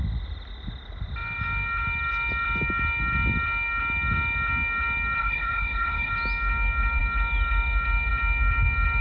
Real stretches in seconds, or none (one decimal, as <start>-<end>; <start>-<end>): 0.0-5.2; 6.1-9.0